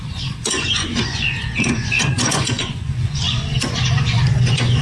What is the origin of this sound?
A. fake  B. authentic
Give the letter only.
A